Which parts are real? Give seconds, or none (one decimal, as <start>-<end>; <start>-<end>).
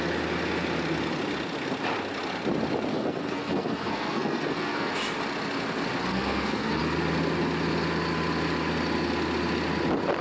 0.0-2.9; 4.9-6.1; 6.8-10.2